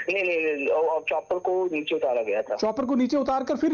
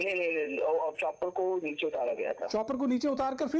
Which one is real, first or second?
first